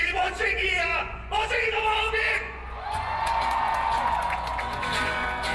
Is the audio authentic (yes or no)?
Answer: no